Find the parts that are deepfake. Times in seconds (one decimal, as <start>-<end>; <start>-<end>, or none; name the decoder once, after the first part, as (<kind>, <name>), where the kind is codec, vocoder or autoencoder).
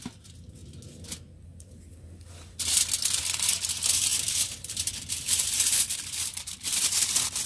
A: 4.1-7.1 (vocoder, BigVGAN v2)